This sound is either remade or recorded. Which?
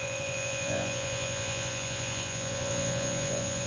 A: remade